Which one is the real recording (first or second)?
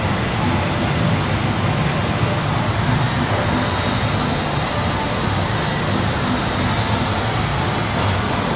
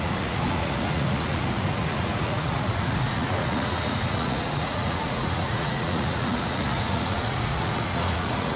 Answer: first